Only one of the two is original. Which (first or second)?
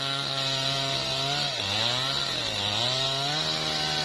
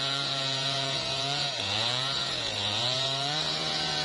first